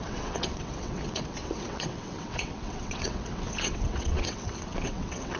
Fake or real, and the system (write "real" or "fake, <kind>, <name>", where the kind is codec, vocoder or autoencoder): fake, vocoder, WaveNeXt